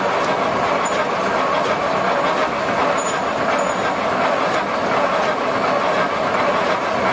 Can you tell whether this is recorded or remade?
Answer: recorded